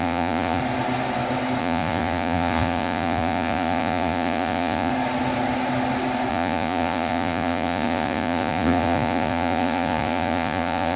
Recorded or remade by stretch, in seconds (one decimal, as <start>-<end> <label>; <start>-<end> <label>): 0.0-0.6 remade; 0.6-1.6 recorded; 1.6-4.9 remade; 4.9-6.3 recorded; 6.3-11.0 remade